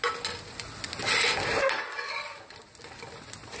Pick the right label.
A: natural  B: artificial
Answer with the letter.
A